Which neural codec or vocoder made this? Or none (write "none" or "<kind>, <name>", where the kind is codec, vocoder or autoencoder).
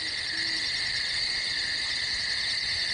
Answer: none